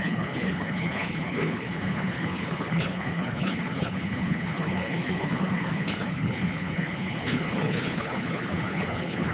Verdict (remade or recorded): remade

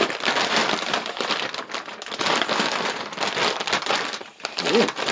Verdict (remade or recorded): recorded